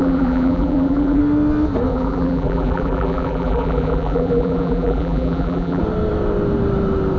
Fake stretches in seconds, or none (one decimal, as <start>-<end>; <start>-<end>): 0.0-1.2; 1.9-5.8